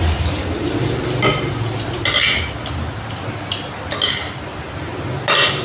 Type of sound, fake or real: real